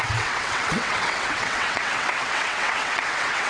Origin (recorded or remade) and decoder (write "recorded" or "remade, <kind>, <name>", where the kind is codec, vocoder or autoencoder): remade, vocoder, WaveNeXt